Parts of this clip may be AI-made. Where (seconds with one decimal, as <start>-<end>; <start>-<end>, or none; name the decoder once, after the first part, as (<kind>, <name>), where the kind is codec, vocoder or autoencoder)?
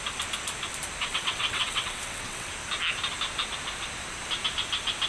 1.1-2.5 (vocoder, WaveNeXt)